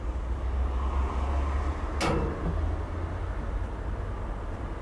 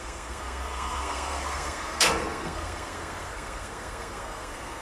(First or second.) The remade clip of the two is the second